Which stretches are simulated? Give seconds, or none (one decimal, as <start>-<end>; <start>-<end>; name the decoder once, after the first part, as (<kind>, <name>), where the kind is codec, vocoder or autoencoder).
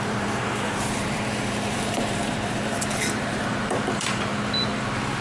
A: 0.0-4.3 (vocoder, BigVGAN v2)